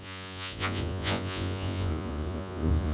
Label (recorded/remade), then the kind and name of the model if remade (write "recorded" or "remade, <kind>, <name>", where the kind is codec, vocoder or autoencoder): remade, vocoder, Vocos